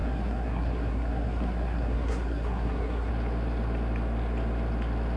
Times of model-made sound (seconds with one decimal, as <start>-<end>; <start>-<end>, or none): 0.0-3.1